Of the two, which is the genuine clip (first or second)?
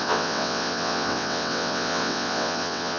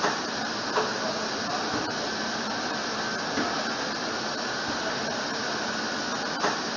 second